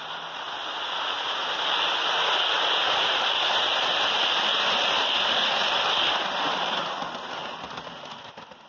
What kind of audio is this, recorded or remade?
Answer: recorded